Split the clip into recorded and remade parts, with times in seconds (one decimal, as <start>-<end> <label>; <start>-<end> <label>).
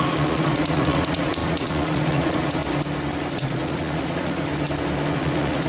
0.0-2.6 remade; 2.6-3.3 recorded; 3.3-4.5 remade; 4.5-5.1 recorded; 5.1-5.7 remade